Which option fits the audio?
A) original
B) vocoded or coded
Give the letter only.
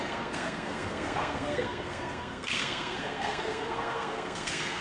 B